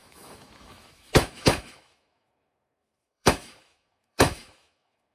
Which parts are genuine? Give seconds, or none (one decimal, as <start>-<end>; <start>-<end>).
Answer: none